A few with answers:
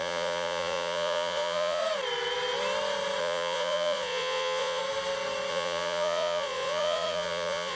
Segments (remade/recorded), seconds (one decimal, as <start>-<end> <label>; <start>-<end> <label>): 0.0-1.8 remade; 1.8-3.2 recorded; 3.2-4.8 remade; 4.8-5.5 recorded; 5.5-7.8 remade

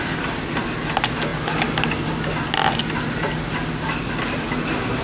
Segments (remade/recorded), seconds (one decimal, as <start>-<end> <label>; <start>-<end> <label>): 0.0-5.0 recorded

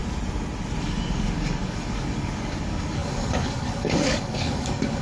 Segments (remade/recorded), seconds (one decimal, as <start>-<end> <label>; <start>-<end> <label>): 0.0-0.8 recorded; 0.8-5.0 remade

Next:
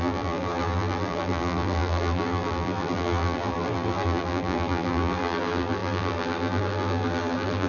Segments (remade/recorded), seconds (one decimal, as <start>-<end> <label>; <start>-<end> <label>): 0.0-7.7 remade

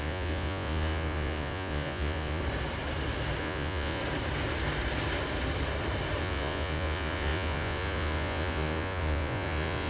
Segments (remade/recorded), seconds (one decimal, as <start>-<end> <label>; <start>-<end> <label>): 0.0-2.4 remade; 2.4-3.4 recorded; 3.4-4.0 remade; 4.0-6.2 recorded; 6.2-9.9 remade

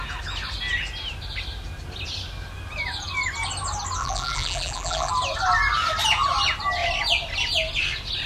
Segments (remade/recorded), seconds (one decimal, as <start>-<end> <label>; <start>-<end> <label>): 0.0-4.0 recorded; 4.0-5.1 remade; 5.1-8.3 recorded